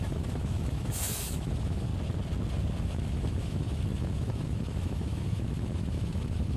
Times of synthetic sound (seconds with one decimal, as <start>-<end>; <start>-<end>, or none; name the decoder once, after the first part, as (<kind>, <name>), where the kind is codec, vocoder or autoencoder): 0.0-1.9 (autoencoder, DAC-VAE); 2.8-6.6